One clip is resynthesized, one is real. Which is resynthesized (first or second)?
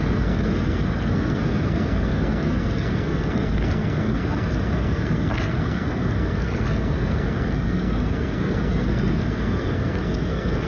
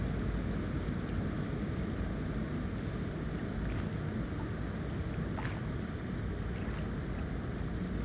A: first